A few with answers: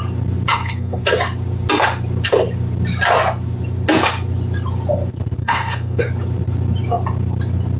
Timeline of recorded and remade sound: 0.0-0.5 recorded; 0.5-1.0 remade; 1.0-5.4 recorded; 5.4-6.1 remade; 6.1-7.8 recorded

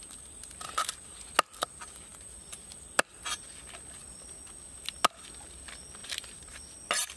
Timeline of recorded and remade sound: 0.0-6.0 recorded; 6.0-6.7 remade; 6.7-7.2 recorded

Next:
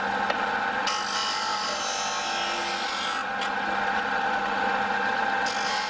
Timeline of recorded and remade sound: 0.0-5.9 recorded

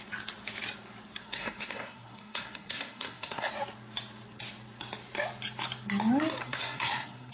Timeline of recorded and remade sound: 0.0-1.2 recorded; 1.2-3.5 remade; 3.5-6.4 recorded; 6.4-7.3 remade

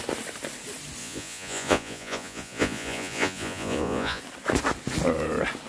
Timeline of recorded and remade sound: 0.0-1.0 recorded; 1.0-4.2 remade; 4.2-5.7 recorded

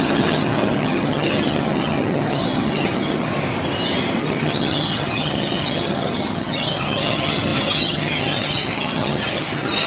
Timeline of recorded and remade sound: 0.0-3.3 remade; 3.3-4.2 recorded; 4.2-9.9 remade